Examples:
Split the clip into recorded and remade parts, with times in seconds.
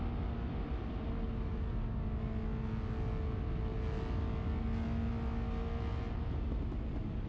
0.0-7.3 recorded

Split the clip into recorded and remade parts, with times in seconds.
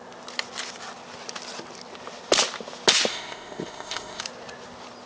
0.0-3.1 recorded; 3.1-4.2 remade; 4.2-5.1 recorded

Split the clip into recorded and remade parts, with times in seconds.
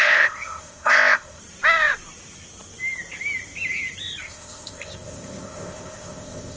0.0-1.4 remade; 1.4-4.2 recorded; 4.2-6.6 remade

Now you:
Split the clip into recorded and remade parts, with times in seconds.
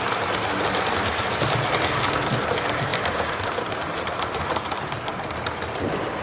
0.0-6.2 recorded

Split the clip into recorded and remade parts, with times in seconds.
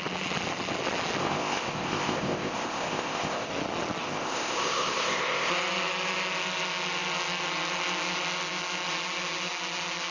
0.0-1.2 recorded; 1.2-3.5 remade; 3.5-4.0 recorded; 4.0-5.5 remade; 5.5-10.1 recorded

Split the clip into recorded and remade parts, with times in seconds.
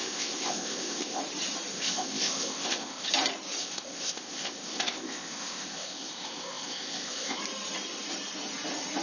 0.0-1.2 remade; 1.2-1.7 recorded; 1.7-3.1 remade; 3.1-3.6 recorded; 3.6-7.4 remade; 7.4-9.0 recorded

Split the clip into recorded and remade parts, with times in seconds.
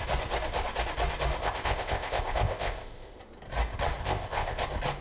0.0-1.4 recorded; 1.4-3.2 remade; 3.2-4.0 recorded; 4.0-4.6 remade; 4.6-5.0 recorded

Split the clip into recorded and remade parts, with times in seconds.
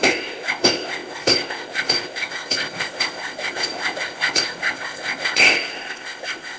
0.0-6.6 remade